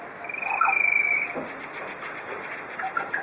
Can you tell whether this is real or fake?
real